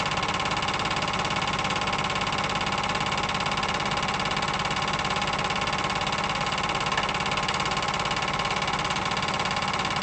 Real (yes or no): yes